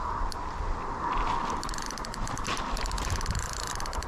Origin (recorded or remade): recorded